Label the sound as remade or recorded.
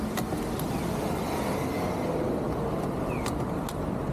recorded